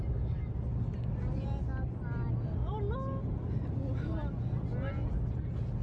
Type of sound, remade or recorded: recorded